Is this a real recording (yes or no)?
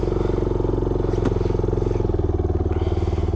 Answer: yes